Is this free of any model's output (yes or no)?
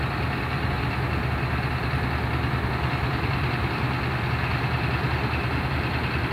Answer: yes